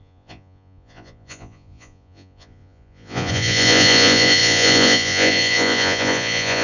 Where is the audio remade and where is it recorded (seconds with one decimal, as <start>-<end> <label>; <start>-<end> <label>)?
0.0-6.6 remade

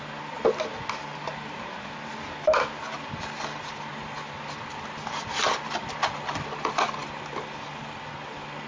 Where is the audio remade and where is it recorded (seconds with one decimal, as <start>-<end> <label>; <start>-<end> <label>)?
0.0-8.7 recorded

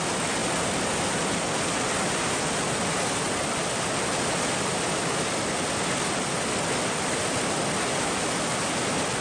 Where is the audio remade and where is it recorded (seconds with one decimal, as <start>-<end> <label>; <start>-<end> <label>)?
0.0-9.2 recorded